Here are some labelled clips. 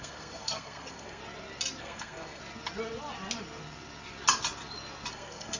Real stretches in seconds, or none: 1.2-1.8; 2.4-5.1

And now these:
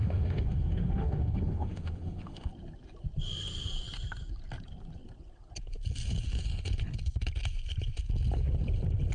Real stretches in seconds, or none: 2.5-9.1

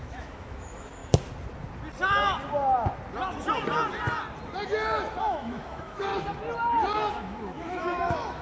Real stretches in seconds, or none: 1.0-5.2; 6.1-7.1

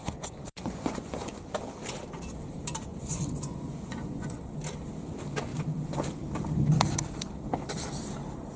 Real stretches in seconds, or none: 1.4-2.9; 4.4-8.6